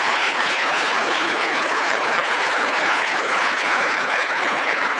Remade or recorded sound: remade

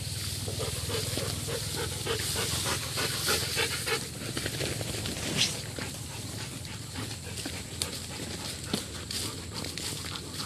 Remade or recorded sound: recorded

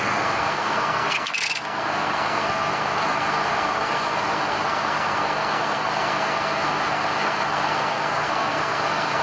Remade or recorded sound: remade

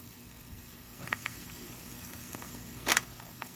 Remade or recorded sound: remade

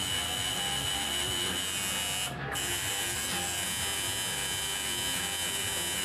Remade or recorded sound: recorded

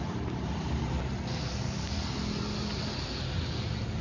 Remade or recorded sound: recorded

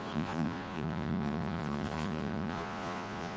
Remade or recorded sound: remade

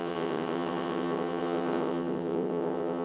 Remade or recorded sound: remade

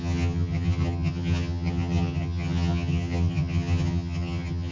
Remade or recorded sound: remade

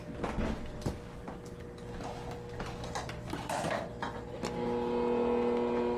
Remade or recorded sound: recorded